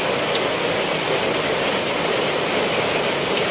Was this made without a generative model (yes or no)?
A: yes